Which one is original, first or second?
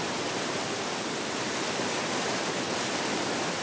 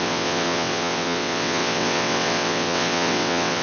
first